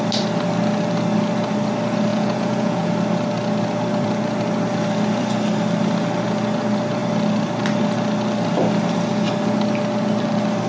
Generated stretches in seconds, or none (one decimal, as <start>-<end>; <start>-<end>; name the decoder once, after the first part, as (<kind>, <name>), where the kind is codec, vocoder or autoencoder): 2.1-2.9 (vocoder, Vocos)